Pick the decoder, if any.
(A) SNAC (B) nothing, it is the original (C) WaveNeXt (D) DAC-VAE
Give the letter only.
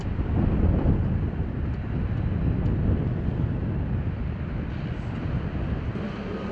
B